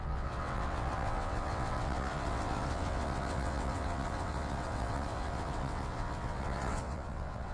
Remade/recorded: remade